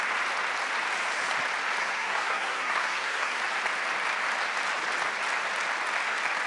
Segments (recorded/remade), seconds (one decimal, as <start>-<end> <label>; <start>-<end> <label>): 0.0-1.8 recorded; 1.8-3.4 remade; 3.4-6.5 recorded